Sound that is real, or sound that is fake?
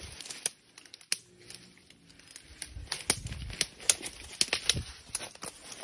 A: real